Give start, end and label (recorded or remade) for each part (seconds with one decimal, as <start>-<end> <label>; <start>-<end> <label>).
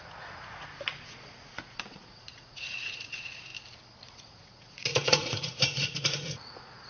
0.0-3.5 remade; 3.5-4.0 recorded; 4.0-6.9 remade